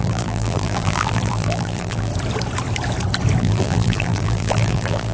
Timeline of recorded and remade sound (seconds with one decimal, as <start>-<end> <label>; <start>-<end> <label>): 0.0-2.1 remade; 2.1-3.4 recorded; 3.4-5.1 remade